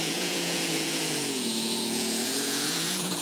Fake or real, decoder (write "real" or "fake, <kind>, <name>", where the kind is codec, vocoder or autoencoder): fake, vocoder, Vocos